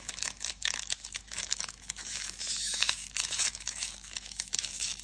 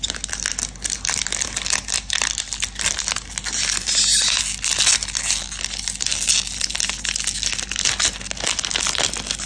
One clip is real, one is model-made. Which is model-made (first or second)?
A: first